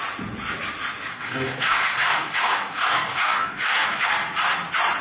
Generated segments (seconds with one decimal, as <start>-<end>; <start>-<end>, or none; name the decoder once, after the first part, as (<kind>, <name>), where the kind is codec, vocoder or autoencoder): 1.1-4.1 (codec, DAC)